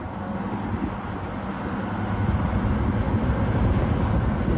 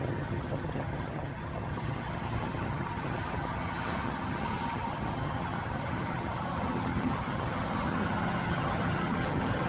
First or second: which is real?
first